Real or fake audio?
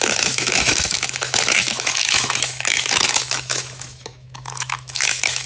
fake